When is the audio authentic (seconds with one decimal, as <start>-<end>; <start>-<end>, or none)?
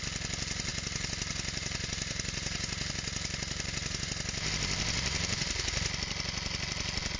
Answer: 0.0-0.7; 4.5-7.2